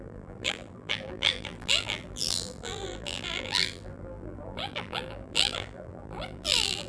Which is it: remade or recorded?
remade